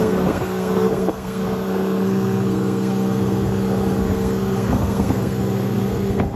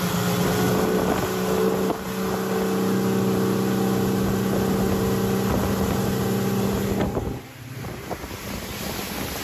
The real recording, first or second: second